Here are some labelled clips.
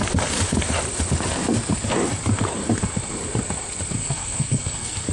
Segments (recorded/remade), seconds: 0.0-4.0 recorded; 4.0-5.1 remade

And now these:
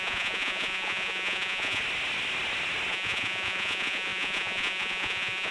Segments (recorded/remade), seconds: 0.0-1.8 remade; 1.8-2.9 recorded; 2.9-5.5 remade

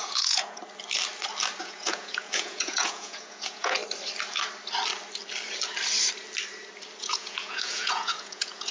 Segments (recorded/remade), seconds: 0.0-0.6 remade; 0.6-1.6 recorded; 1.6-3.8 remade; 3.8-7.0 recorded; 7.0-8.7 remade

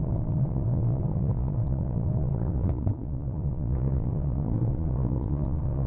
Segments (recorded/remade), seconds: 0.0-5.9 remade

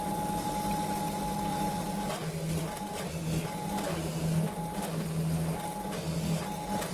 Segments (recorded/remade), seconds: 0.0-1.5 recorded; 1.5-3.2 remade; 3.2-6.9 recorded

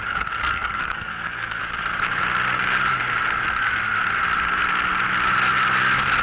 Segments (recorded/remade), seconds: 0.0-0.4 recorded; 0.4-1.6 remade; 1.6-6.2 recorded